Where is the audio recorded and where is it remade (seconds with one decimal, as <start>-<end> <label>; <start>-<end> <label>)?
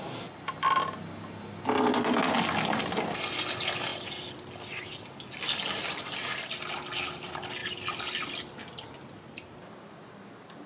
0.0-10.7 recorded